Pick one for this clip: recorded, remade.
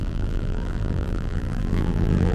remade